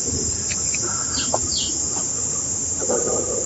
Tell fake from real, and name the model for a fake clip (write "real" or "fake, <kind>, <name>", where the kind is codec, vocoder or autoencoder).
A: real